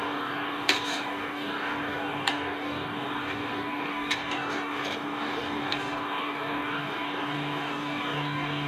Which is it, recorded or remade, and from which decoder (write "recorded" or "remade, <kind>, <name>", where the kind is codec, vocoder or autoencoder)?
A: remade, codec, DAC